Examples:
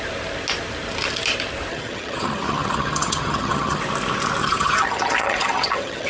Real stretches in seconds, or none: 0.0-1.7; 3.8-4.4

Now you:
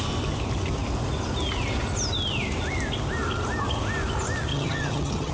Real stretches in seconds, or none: 0.0-4.5

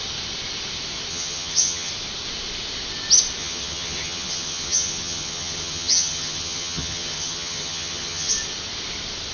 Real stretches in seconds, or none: 0.0-1.1; 1.9-3.4; 8.3-9.3

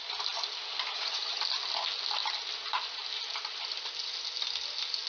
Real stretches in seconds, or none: 0.0-0.9; 1.4-5.1

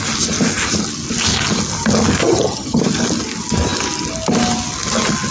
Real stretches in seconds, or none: 0.0-2.2; 2.8-5.3

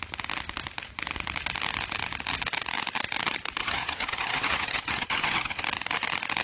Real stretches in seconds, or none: 0.0-3.6; 5.6-6.4

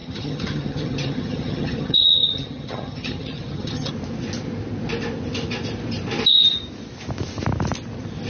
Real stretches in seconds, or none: 3.9-8.3